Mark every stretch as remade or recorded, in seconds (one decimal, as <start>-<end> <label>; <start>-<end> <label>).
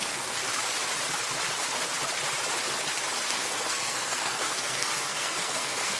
0.0-0.4 remade; 0.4-3.3 recorded; 3.3-6.0 remade